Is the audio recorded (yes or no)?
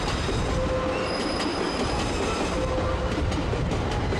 yes